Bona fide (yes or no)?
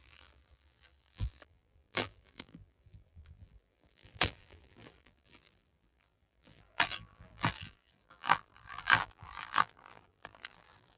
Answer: no